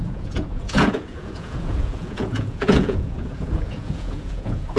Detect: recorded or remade remade